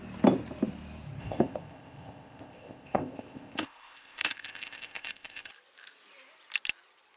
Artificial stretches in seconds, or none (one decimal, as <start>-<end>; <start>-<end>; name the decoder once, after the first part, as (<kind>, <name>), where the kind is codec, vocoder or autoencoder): 1.2-5.5 (codec, ZipCodec)